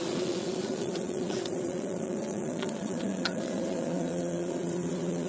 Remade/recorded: remade